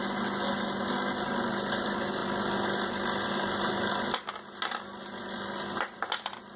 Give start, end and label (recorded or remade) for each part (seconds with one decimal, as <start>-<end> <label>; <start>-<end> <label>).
0.0-6.6 recorded